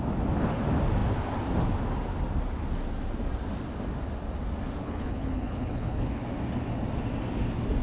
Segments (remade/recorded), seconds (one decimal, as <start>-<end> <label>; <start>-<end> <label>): 0.0-4.8 recorded; 4.8-6.2 remade; 6.2-7.8 recorded